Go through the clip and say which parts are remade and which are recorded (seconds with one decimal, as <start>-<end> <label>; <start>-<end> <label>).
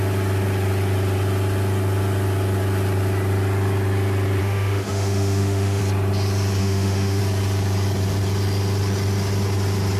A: 0.0-4.4 recorded; 4.4-5.8 remade; 5.8-6.6 recorded; 6.6-7.2 remade; 7.2-10.0 recorded